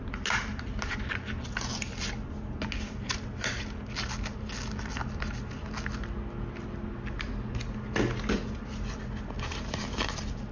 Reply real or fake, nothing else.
real